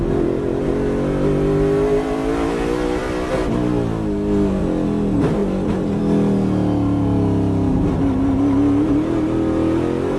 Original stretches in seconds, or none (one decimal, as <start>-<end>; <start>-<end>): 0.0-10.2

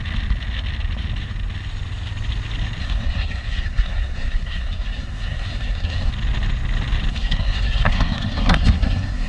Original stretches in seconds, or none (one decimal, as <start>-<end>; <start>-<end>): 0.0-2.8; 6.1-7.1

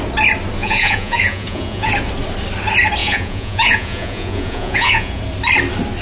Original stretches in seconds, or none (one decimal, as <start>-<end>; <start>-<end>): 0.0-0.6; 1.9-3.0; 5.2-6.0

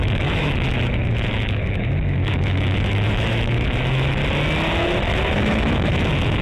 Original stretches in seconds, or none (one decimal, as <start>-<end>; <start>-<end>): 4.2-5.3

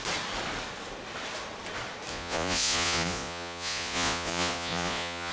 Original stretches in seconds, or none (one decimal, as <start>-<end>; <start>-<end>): 0.0-2.1